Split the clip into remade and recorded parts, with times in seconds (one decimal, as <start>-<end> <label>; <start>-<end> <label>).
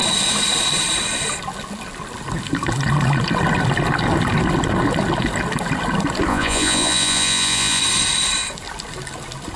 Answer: 0.0-6.3 recorded; 6.3-7.8 remade; 7.8-9.6 recorded